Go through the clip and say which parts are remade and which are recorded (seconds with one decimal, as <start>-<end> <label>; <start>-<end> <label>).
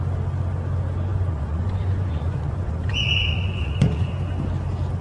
0.0-1.1 recorded; 1.1-4.1 remade; 4.1-5.0 recorded